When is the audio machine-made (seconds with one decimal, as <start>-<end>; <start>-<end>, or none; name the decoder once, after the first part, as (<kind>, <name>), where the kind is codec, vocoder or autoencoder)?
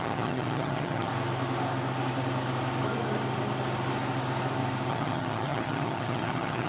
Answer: 0.0-1.1 (vocoder, HiFi-GAN); 4.9-6.7